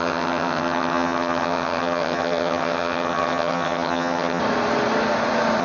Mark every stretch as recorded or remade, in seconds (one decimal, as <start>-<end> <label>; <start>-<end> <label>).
0.0-4.4 remade; 4.4-5.6 recorded

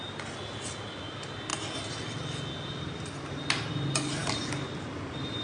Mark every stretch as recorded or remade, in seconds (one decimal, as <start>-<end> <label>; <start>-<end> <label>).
0.0-5.4 recorded

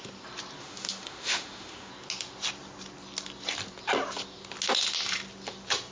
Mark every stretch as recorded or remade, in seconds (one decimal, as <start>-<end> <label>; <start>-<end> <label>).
0.0-0.6 recorded; 0.6-1.9 remade; 1.9-5.9 recorded

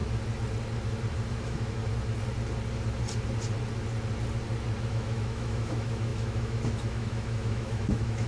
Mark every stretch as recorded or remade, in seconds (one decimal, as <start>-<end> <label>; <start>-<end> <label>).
0.0-1.3 recorded; 1.3-1.8 remade; 1.8-4.9 recorded; 4.9-8.3 remade

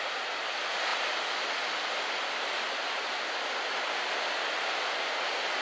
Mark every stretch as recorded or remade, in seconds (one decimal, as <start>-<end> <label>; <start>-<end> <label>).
0.0-5.6 recorded